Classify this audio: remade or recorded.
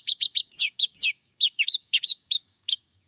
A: remade